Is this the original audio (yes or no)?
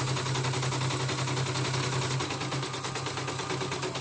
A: yes